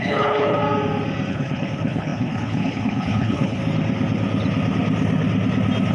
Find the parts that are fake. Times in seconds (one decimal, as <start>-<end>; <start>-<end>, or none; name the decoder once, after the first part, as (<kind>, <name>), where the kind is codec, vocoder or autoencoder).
0.0-0.6 (codec, HILCodec); 1.3-3.6